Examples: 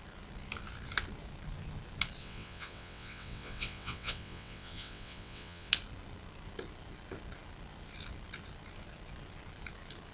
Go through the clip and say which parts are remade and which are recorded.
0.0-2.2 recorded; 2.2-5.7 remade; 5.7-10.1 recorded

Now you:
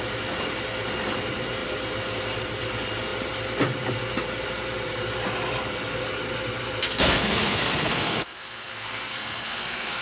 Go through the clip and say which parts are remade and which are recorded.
0.0-6.8 recorded; 6.8-10.0 remade

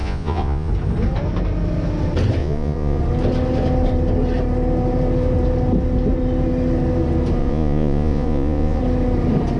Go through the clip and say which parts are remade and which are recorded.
0.0-0.7 remade; 0.7-2.4 recorded; 2.4-3.0 remade; 3.0-7.4 recorded; 7.4-8.8 remade; 8.8-9.6 recorded

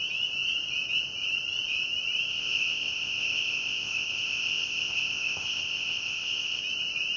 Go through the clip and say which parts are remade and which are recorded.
0.0-2.3 recorded; 2.3-6.6 remade; 6.6-7.2 recorded

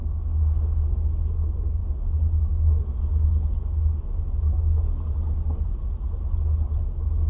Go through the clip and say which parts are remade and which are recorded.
0.0-7.3 recorded

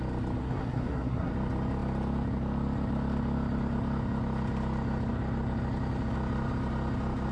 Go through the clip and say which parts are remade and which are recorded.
0.0-0.4 recorded; 0.4-1.3 remade; 1.3-7.3 recorded

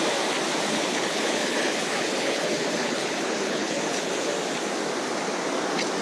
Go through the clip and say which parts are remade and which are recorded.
0.0-0.7 recorded; 0.7-4.3 remade; 4.3-6.0 recorded